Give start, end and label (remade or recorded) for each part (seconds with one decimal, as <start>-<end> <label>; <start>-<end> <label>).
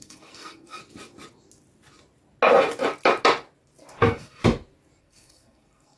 0.0-0.8 remade; 0.8-3.9 recorded; 3.9-4.4 remade; 4.4-5.0 recorded; 5.0-6.0 remade